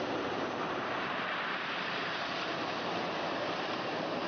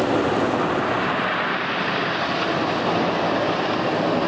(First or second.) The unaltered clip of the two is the second